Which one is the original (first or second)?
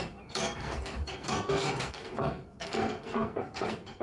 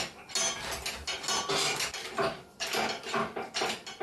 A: second